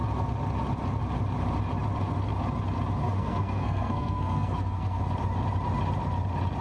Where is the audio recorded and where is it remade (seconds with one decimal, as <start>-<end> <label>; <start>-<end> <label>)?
0.0-3.0 recorded; 3.0-5.0 remade; 5.0-6.6 recorded